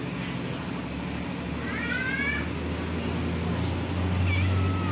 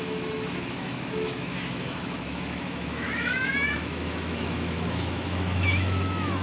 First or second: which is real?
first